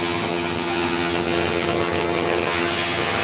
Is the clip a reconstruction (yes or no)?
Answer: yes